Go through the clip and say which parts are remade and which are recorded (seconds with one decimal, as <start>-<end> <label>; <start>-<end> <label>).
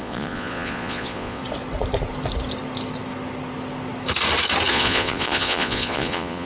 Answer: 0.0-1.4 remade; 1.4-4.7 recorded; 4.7-6.5 remade